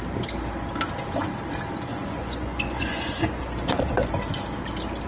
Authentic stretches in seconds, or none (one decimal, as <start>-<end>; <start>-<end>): 0.0-1.9; 4.1-5.1